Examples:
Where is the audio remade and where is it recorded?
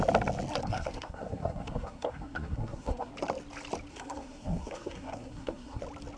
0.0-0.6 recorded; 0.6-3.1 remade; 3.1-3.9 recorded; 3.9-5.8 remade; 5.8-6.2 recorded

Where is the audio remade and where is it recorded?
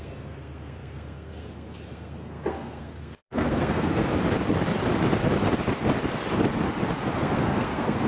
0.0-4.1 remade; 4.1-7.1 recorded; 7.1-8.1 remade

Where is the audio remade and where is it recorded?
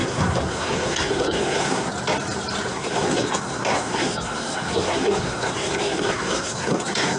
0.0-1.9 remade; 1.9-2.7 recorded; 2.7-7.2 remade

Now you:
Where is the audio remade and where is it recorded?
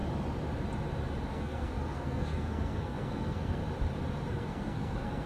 0.0-1.3 recorded; 1.3-3.6 remade; 3.6-4.3 recorded; 4.3-5.3 remade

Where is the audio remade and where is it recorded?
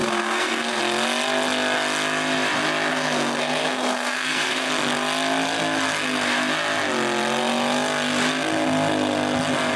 0.0-0.8 remade; 0.8-2.9 recorded; 2.9-4.7 remade; 4.7-9.8 recorded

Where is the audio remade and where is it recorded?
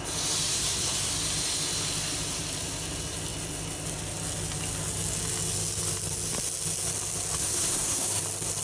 0.0-0.5 recorded; 0.5-1.1 remade; 1.1-7.4 recorded; 7.4-8.2 remade; 8.2-8.6 recorded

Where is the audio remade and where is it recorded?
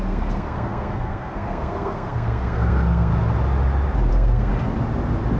0.0-3.1 remade; 3.1-4.1 recorded; 4.1-4.5 remade; 4.5-5.4 recorded